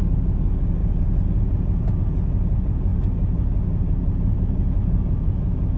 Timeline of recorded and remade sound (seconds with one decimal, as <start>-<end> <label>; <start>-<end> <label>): 0.0-0.8 recorded; 0.8-2.0 remade; 2.0-2.9 recorded; 2.9-5.8 remade